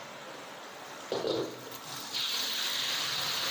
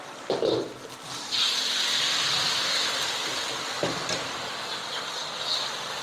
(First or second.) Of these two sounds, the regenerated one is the second